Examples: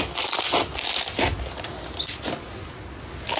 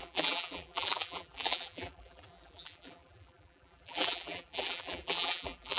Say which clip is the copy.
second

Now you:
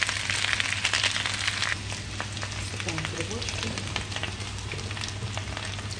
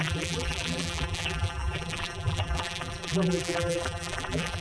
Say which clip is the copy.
second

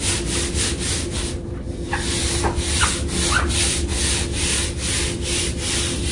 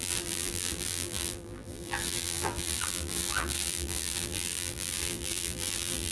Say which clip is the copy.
second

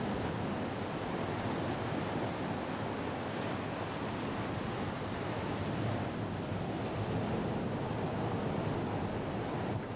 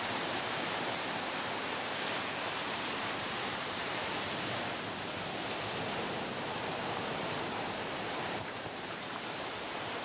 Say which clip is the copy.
second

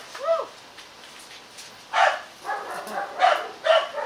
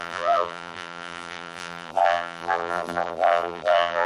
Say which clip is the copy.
second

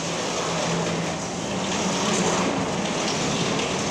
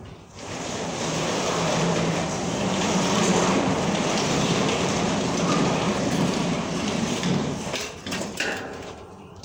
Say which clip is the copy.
second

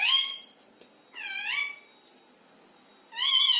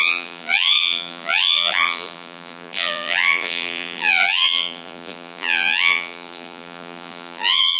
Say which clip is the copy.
second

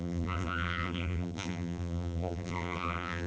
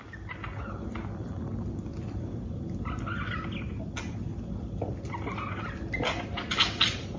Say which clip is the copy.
first